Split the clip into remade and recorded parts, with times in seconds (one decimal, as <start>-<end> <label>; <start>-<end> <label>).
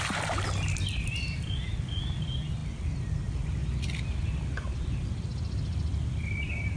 0.0-6.8 recorded